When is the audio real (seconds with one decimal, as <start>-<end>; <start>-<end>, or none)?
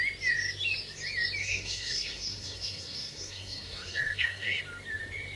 0.0-1.4; 4.6-5.4